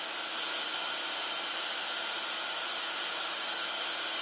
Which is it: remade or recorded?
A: recorded